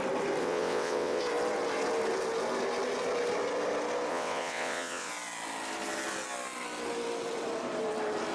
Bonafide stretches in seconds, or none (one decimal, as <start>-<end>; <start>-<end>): 0.0-0.4; 1.2-4.1; 5.1-8.3